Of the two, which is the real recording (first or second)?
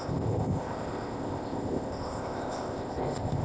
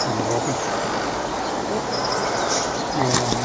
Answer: second